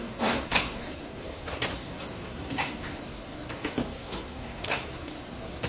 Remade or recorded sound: remade